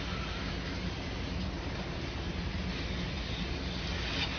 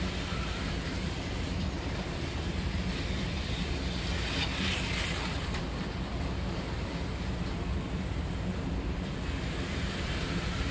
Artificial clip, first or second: second